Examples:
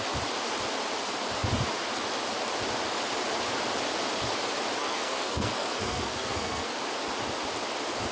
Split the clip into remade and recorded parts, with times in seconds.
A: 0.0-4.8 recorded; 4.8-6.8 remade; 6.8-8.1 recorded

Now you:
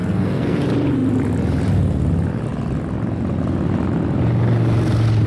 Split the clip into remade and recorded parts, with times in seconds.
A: 0.0-0.6 remade; 0.6-5.3 recorded

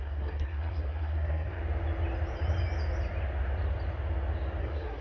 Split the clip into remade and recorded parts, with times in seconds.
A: 0.0-1.6 remade; 1.6-4.6 recorded; 4.6-5.0 remade

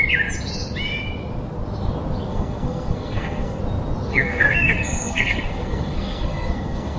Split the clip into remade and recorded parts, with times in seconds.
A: 0.0-2.3 recorded; 2.3-3.6 remade; 3.6-4.1 recorded; 4.1-7.0 remade

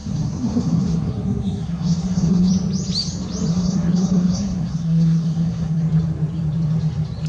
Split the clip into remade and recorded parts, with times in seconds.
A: 0.0-2.5 remade; 2.5-3.5 recorded; 3.5-5.8 remade; 5.8-7.3 recorded

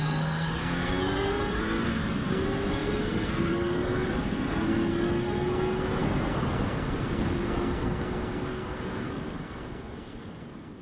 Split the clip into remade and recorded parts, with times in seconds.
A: 0.0-10.8 remade